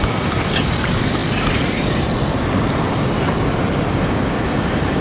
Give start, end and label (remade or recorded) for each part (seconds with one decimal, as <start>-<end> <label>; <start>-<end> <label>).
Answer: 0.0-5.0 recorded